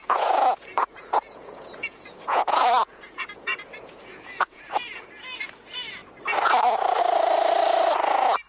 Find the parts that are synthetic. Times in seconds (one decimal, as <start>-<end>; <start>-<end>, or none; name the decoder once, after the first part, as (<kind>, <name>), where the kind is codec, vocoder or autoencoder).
0.0-5.1 (vocoder, Vocos)